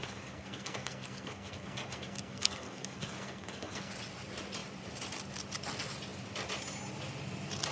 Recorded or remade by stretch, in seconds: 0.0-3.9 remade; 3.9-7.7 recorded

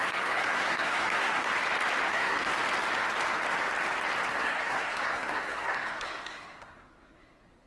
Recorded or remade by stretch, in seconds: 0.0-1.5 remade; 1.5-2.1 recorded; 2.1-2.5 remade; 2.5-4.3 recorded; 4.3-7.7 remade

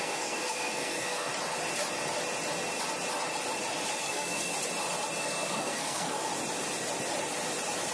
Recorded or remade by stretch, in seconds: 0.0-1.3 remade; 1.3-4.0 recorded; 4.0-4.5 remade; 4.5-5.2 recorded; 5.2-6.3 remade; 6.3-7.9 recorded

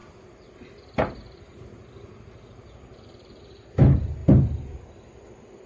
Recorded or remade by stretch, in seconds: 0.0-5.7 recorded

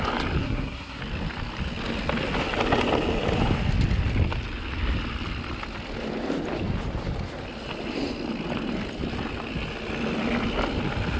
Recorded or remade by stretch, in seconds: 0.0-0.4 recorded; 0.4-1.0 remade; 1.0-11.2 recorded

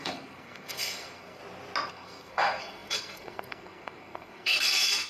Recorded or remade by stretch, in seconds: 0.0-1.4 remade; 1.4-1.9 recorded; 1.9-5.1 remade